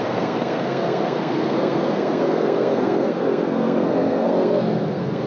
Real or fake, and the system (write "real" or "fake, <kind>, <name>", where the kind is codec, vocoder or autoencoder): fake, codec, SNAC